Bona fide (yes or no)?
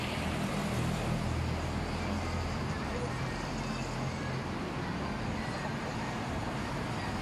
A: yes